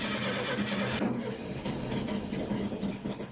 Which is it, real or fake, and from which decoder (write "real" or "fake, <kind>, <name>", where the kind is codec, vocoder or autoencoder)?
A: real